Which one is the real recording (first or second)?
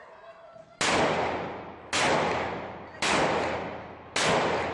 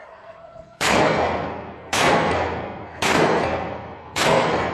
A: first